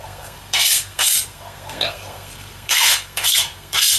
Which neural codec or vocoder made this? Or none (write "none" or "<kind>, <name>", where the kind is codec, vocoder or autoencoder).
codec, SNAC